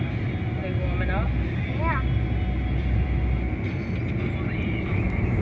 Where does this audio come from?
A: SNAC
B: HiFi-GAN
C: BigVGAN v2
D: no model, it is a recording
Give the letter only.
D